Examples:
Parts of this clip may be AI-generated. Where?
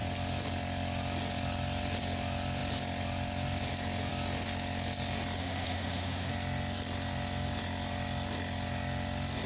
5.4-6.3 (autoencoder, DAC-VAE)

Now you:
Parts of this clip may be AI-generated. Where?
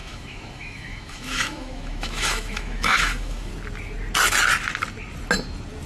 0.0-3.5 (autoencoder, DAC-VAE)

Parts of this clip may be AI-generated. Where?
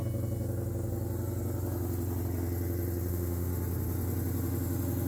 3.1-3.5 (autoencoder, DAC-VAE)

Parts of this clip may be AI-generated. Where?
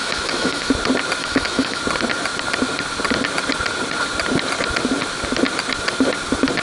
0.0-0.7 (autoencoder, DAC-VAE); 1.2-1.8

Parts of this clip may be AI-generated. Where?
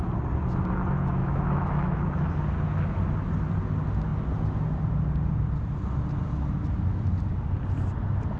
1.2-2.2 (autoencoder, DAC-VAE)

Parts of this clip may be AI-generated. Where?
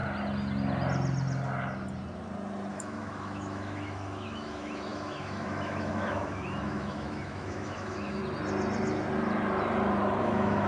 2.7-8.2 (autoencoder, DAC-VAE); 10.2-10.7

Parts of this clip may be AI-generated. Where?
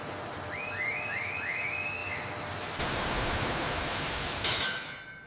none